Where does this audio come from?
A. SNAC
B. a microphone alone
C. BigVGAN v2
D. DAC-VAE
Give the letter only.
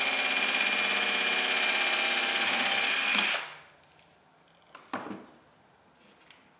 B